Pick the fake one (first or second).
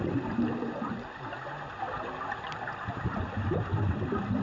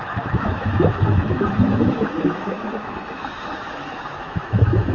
second